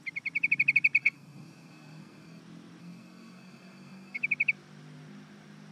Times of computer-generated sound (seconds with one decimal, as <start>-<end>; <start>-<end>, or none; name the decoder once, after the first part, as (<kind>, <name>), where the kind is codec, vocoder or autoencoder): 1.0-2.4 (codec, SNAC); 2.8-4.2

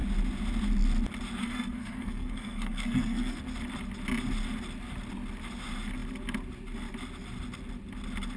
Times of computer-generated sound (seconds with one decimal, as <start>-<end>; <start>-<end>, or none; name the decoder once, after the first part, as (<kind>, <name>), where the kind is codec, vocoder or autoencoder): 1.4-3.4 (codec, SNAC)

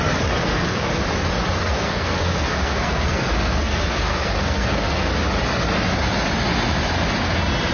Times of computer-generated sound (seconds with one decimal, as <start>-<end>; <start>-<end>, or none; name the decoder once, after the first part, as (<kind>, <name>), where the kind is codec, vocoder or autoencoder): 0.4-1.0 (codec, SNAC); 1.6-5.1

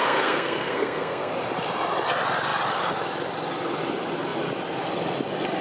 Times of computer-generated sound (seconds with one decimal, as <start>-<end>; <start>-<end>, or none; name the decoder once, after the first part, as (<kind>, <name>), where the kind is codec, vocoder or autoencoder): 0.0-1.3 (codec, SNAC)

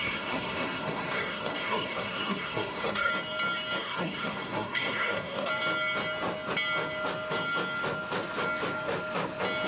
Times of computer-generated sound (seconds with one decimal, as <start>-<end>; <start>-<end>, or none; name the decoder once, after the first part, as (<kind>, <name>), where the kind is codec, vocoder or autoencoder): 0.0-3.1 (codec, SNAC); 3.8-5.5

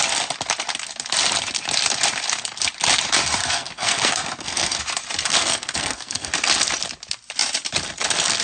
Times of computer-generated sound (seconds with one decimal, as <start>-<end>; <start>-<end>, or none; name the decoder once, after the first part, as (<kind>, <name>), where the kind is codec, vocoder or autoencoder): 3.4-4.8 (codec, SNAC); 5.3-6.3